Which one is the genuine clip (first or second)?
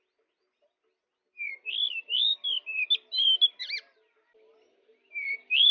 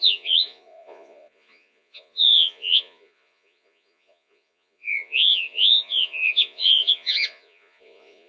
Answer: first